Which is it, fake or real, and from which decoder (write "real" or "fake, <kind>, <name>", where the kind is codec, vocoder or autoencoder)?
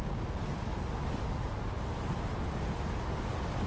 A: real